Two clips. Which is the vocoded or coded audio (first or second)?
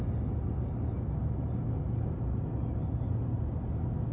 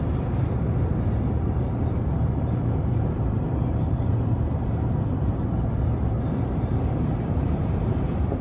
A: second